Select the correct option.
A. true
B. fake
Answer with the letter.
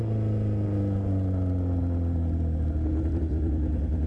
A